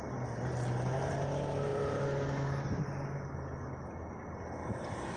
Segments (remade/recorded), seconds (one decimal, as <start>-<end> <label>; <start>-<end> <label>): 0.0-5.2 recorded